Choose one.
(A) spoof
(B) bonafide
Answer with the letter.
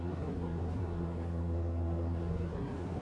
A